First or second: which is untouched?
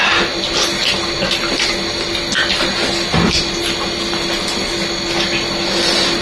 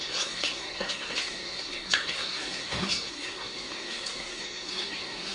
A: first